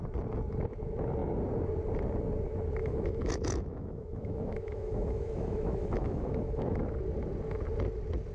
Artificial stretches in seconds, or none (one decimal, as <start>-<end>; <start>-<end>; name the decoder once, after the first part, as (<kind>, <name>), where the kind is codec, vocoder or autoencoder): 2.8-6.8 (autoencoder, DAC-VAE)

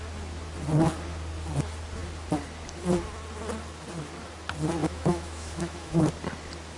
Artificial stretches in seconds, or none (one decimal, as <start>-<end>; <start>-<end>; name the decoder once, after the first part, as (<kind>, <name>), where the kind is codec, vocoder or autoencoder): 4.8-6.0 (autoencoder, DAC-VAE)